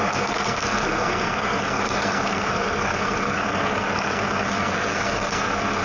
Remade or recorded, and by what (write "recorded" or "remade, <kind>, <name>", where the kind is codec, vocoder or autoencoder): remade, codec, SNAC